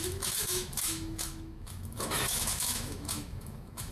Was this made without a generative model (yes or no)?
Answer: no